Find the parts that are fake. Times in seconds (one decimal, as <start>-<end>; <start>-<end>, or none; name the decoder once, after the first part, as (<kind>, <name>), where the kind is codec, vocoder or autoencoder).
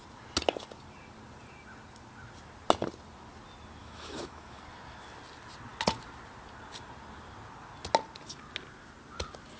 3.8-4.6 (autoencoder, DAC-VAE)